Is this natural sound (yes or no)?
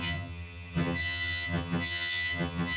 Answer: no